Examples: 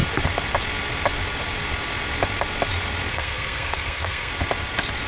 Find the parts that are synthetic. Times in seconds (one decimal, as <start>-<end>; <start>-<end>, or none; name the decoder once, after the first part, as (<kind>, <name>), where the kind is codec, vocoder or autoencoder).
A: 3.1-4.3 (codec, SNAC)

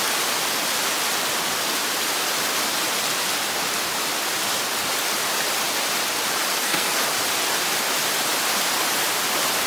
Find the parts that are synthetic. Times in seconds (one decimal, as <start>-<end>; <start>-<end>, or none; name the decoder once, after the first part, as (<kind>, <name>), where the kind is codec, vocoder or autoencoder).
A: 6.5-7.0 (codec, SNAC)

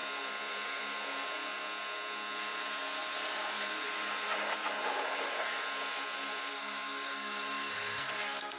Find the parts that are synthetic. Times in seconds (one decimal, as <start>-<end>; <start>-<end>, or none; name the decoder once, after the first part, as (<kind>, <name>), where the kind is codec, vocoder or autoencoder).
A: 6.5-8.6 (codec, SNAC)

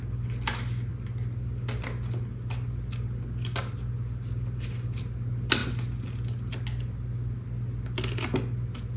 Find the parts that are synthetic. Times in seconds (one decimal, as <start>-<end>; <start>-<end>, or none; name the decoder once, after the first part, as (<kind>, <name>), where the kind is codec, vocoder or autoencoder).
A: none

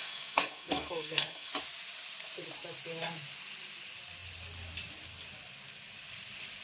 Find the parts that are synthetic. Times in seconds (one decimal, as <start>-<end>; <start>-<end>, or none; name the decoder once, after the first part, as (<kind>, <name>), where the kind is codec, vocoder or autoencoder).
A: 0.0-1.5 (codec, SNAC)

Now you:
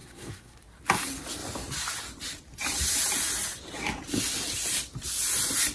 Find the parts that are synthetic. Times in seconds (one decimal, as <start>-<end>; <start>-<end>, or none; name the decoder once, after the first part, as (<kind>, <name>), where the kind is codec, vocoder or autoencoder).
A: 0.0-0.6 (codec, SNAC)

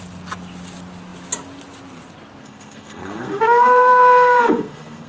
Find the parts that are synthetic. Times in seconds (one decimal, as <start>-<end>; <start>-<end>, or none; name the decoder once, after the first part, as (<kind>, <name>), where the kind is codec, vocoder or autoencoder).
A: 2.4-5.1 (codec, SNAC)